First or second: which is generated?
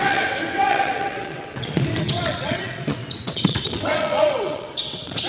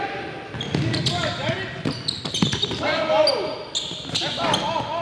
first